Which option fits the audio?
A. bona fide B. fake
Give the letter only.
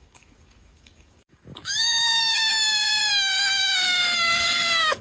B